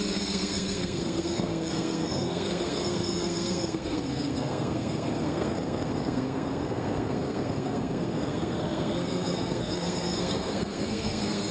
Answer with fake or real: fake